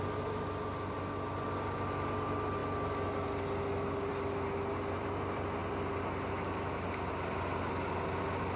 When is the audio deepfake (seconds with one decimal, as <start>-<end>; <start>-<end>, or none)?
none